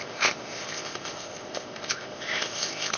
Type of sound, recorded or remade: remade